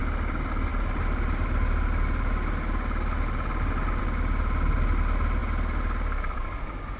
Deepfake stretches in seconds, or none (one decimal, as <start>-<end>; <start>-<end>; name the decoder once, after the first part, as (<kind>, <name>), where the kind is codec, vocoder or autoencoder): none